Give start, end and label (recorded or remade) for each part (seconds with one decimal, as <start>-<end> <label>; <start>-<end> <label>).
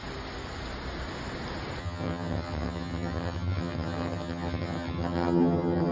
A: 0.0-1.8 recorded; 1.8-5.9 remade